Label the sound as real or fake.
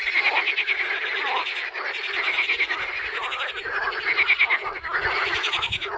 real